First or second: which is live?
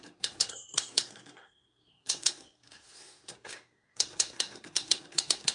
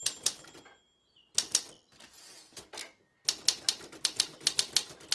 second